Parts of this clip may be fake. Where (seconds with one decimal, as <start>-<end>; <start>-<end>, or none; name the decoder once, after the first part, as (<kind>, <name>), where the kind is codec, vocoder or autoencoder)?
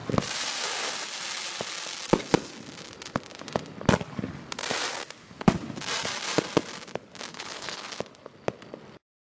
7.3-7.9 (codec, HILCodec)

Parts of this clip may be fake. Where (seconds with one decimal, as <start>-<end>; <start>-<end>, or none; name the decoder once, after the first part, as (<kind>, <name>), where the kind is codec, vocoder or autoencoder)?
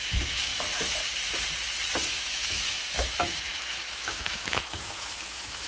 0.0-0.5 (autoencoder, DAC-VAE); 2.1-5.7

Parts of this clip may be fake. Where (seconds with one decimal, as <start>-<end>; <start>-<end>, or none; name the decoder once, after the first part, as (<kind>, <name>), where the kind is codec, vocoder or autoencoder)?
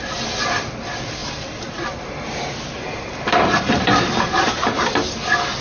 1.2-4.6 (vocoder, BigVGAN v2)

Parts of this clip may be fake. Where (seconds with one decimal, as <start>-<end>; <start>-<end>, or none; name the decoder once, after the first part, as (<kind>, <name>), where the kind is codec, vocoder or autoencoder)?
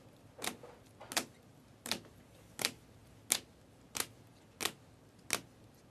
1.5-2.1 (vocoder, BigVGAN v2)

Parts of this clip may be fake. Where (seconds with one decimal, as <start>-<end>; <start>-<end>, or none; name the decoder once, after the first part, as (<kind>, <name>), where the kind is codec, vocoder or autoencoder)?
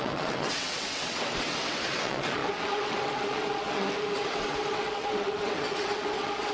0.0-6.5 (vocoder, WaveNeXt)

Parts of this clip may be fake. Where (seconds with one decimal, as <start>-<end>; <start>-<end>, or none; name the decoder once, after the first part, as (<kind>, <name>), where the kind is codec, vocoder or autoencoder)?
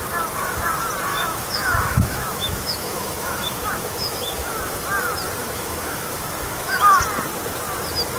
1.1-4.6 (autoencoder, DAC-VAE); 5.4-7.0